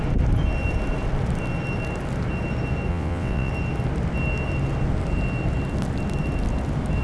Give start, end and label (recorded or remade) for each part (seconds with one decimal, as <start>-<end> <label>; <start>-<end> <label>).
0.0-2.9 recorded; 2.9-3.5 remade; 3.5-7.0 recorded